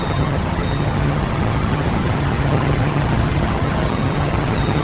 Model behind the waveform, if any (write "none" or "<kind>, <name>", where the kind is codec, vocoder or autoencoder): vocoder, HiFi-GAN